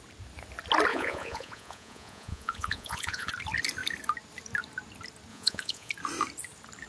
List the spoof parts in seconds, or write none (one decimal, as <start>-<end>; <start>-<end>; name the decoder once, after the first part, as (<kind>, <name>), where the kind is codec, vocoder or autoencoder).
0.9-3.3 (vocoder, Vocos); 5.3-5.9

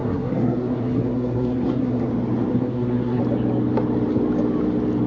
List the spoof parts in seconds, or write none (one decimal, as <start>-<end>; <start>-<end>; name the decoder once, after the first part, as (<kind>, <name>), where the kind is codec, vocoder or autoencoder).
0.0-2.1 (codec, SNAC); 2.5-3.2